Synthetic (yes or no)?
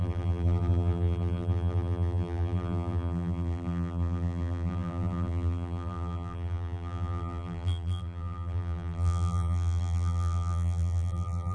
yes